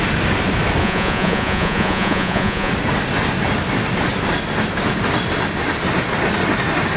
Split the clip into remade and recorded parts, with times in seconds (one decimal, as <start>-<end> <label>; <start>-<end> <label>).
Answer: 0.0-0.8 recorded; 0.8-2.7 remade; 2.7-7.0 recorded